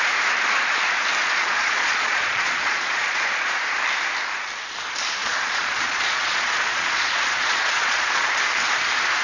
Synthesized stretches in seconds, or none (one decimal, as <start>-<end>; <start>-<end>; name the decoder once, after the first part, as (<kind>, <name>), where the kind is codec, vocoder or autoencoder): 1.2-3.8 (vocoder, Vocos); 5.2-8.3